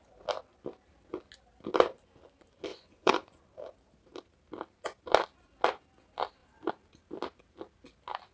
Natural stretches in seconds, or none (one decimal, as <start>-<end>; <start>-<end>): 0.0-2.7; 3.4-8.3